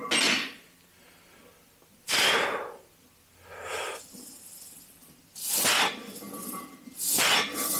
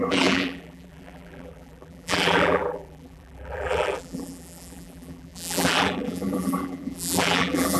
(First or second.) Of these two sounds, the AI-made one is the second